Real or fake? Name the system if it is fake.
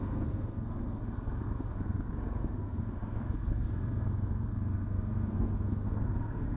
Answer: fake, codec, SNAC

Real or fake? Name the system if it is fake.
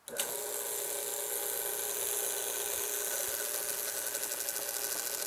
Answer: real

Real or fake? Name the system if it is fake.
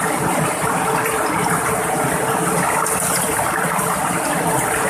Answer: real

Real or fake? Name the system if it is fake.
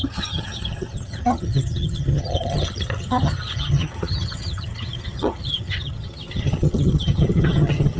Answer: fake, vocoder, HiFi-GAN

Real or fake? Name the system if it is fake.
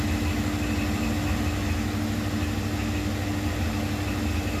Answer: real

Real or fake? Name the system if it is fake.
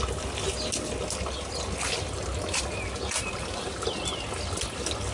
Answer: real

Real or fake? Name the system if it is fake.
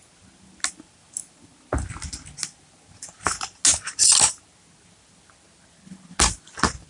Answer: real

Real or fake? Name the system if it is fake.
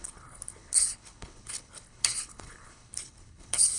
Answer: fake, codec, HILCodec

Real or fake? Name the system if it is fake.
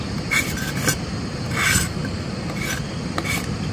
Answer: real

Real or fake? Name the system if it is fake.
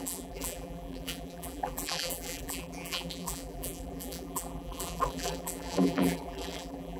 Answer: fake, vocoder, BigVGAN v2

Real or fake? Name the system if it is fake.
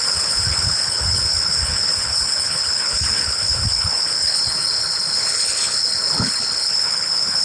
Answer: fake, codec, HILCodec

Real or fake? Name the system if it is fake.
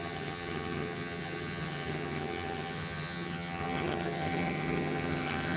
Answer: fake, vocoder, HiFi-GAN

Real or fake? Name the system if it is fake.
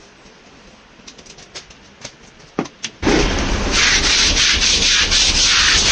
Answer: real